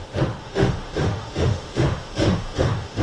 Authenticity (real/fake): fake